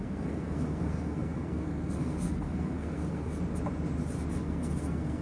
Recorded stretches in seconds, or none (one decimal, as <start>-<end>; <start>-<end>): 3.3-4.3